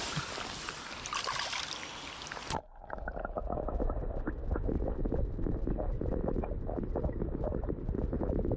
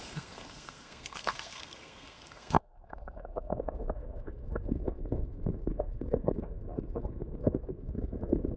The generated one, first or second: second